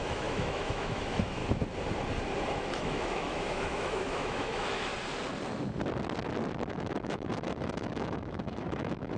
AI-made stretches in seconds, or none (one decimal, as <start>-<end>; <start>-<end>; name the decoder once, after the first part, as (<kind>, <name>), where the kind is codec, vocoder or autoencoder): 0.0-1.4 (autoencoder, DAC-VAE); 2.5-4.9; 6.7-9.2